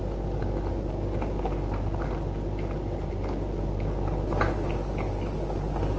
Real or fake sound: real